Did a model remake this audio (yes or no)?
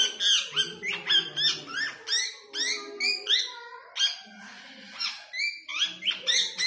no